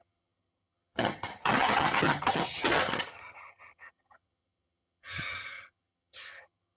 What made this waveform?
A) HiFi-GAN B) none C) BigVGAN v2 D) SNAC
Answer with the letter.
A